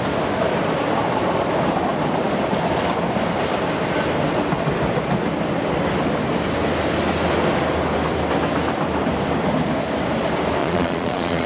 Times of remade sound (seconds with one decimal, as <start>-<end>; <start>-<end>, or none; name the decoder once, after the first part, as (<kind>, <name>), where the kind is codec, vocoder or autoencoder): 10.6-11.5 (vocoder, Vocos)